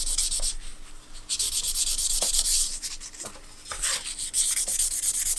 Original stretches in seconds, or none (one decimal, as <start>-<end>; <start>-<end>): 0.0-5.4